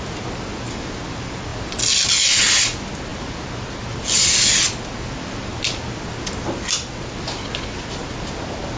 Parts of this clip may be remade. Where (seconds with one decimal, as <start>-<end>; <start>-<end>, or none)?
none